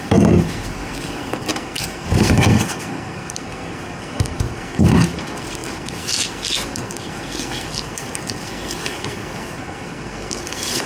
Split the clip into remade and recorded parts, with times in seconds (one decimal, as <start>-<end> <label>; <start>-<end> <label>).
0.0-10.9 remade